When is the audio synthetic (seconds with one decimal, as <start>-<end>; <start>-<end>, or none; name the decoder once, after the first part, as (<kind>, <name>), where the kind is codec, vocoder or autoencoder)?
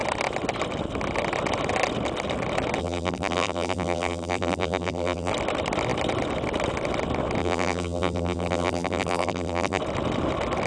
2.8-5.3 (vocoder, BigVGAN v2); 7.4-9.8